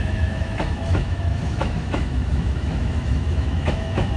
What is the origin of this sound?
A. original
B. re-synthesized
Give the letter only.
B